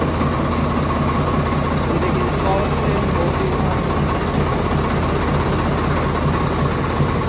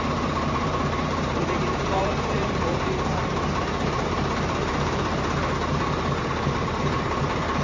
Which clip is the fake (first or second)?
second